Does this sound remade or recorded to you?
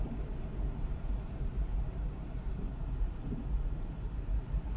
remade